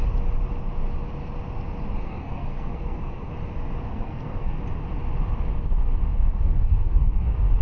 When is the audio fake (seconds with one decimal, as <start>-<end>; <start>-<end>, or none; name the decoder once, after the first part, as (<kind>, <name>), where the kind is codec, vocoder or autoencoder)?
2.0-3.3 (codec, SNAC); 3.9-4.6; 6.1-7.6